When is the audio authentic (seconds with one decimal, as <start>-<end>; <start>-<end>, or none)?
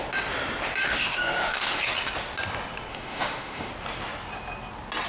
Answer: 0.0-0.9; 1.8-2.9; 3.7-5.1